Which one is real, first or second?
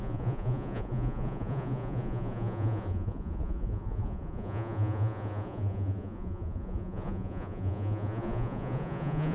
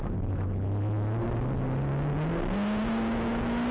second